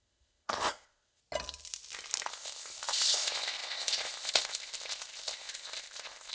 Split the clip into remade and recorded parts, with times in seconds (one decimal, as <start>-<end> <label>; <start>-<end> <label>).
0.0-1.2 remade; 1.2-2.3 recorded; 2.3-6.3 remade